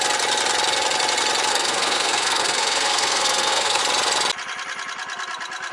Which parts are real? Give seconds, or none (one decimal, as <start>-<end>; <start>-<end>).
0.0-1.5; 3.8-5.7

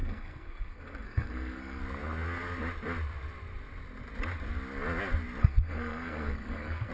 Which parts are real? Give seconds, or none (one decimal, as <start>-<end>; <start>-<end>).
1.8-5.4

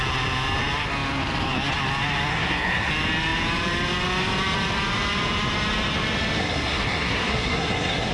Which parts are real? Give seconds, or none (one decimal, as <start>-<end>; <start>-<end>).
0.0-2.3; 2.9-6.4